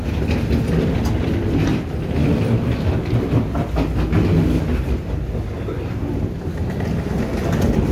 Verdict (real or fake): real